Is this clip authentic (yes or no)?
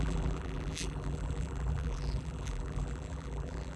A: no